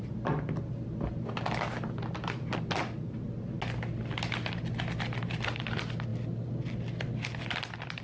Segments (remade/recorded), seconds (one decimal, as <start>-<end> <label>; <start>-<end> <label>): 0.0-8.0 recorded